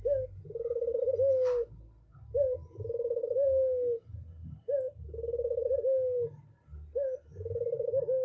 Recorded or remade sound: recorded